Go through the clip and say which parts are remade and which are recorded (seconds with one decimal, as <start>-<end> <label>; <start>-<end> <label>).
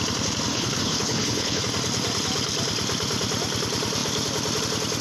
0.0-0.5 recorded; 0.5-1.6 remade; 1.6-5.0 recorded